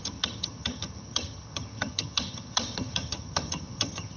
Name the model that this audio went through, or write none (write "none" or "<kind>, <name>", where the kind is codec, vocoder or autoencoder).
vocoder, HiFi-GAN